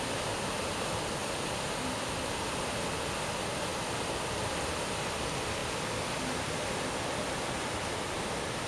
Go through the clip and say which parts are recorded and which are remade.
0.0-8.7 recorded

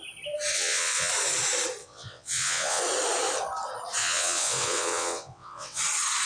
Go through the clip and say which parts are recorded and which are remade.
0.0-0.5 recorded; 0.5-1.1 remade; 1.1-1.8 recorded; 1.8-2.8 remade; 2.8-4.0 recorded; 4.0-5.8 remade; 5.8-6.3 recorded

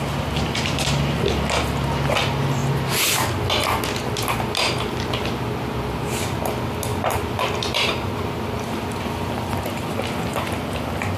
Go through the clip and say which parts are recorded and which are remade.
0.0-6.9 recorded; 6.9-9.9 remade; 9.9-11.2 recorded